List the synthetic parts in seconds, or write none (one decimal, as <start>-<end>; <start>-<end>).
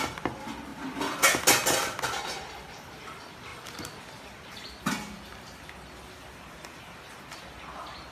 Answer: none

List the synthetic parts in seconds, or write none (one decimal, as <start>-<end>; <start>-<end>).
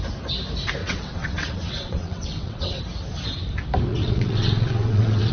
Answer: 0.8-2.8; 3.9-5.3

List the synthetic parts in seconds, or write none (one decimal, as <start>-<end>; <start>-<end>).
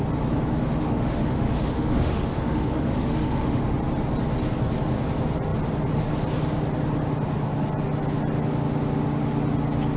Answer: 0.6-3.6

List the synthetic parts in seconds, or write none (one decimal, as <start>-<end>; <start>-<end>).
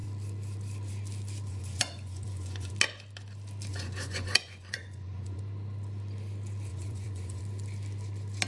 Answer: 1.5-2.7; 3.7-5.4; 6.7-7.4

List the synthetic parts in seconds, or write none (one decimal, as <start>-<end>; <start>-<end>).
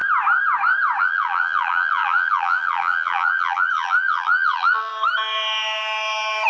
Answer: 1.0-4.9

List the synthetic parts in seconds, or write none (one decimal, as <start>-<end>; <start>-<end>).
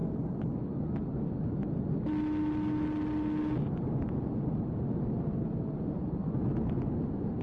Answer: none